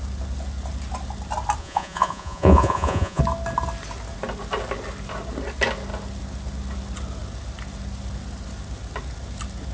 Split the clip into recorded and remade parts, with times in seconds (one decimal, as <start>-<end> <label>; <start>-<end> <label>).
0.0-1.6 recorded; 1.6-3.2 remade; 3.2-9.7 recorded